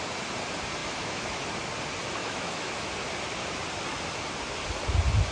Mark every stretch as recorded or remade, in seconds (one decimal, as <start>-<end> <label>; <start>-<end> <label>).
0.0-0.8 recorded; 0.8-1.4 remade; 1.4-2.2 recorded; 2.2-2.9 remade; 2.9-5.3 recorded